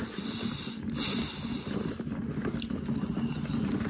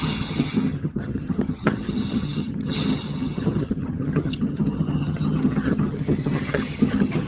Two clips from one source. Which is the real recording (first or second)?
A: first